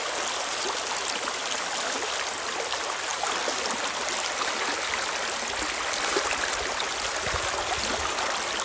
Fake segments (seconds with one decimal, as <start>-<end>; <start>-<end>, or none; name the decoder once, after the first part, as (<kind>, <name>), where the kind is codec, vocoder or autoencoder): none